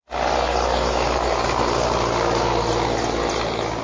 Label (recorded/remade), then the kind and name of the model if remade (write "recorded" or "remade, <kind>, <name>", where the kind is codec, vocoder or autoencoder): recorded